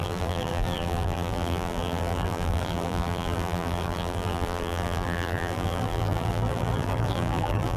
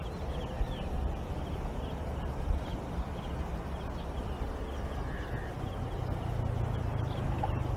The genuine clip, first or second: second